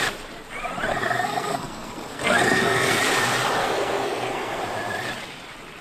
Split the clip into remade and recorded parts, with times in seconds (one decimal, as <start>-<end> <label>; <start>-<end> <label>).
0.0-0.9 recorded; 0.9-3.0 remade; 3.0-3.6 recorded; 3.6-4.6 remade; 4.6-5.8 recorded